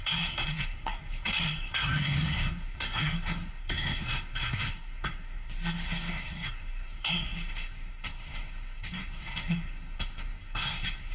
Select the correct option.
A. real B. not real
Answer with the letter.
B